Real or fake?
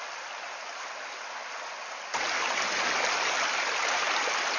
real